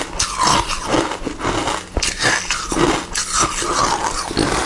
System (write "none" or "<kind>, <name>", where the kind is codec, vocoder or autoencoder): none